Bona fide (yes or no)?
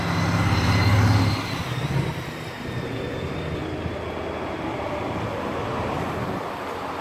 yes